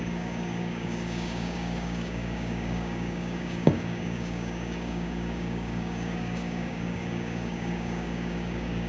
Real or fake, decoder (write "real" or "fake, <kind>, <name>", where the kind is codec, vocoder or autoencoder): fake, codec, DAC